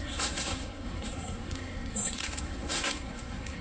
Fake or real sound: fake